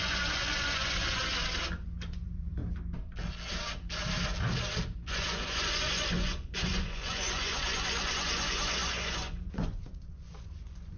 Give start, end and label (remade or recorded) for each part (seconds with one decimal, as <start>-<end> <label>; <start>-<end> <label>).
0.0-1.2 remade; 1.2-2.1 recorded; 2.1-2.6 remade; 2.6-5.1 recorded; 5.1-11.0 remade